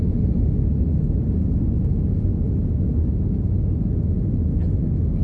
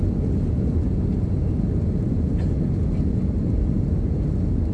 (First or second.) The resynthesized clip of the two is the second